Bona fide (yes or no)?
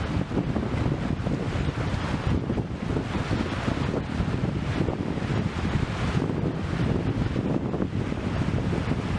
yes